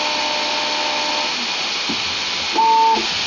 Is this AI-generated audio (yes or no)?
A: no